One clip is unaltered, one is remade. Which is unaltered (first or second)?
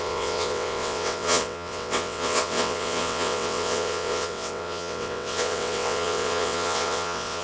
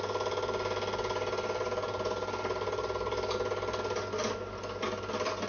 second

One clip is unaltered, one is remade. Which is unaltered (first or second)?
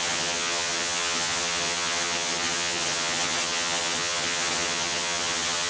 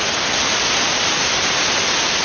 second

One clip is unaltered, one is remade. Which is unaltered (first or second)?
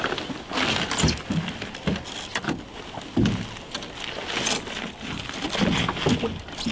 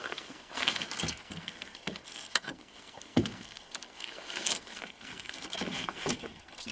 first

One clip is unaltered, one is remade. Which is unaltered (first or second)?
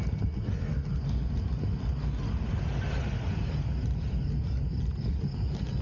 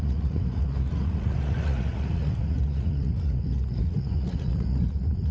first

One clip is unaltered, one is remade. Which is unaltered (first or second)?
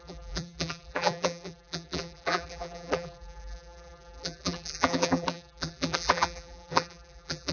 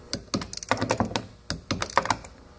second